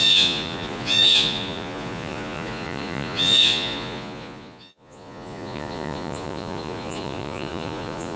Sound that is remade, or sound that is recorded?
remade